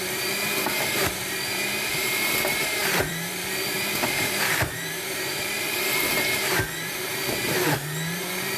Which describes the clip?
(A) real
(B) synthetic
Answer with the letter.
B